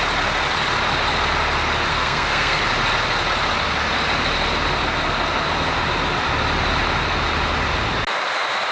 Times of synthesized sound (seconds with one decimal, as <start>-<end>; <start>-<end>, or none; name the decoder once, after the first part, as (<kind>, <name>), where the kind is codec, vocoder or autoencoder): 1.9-2.6 (codec, SNAC)